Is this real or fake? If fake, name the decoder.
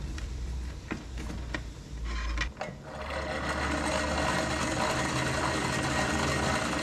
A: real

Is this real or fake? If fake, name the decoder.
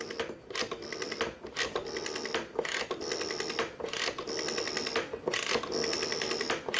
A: real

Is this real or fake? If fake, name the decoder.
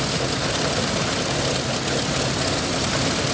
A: real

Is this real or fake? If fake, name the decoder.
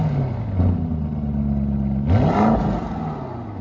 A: real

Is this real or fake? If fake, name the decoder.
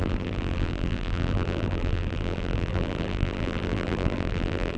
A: fake, vocoder, BigVGAN v2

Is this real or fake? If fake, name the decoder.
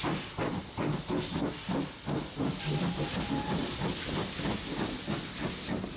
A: real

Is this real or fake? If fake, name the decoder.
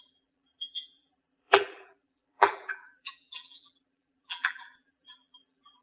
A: fake, vocoder, BigVGAN v2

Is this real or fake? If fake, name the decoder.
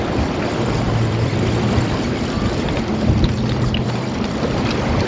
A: fake, vocoder, BigVGAN v2